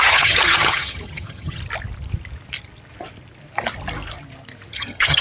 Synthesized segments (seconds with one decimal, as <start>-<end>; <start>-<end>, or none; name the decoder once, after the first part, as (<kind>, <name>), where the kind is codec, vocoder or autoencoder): 0.0-1.6 (vocoder, HiFi-GAN); 4.7-5.2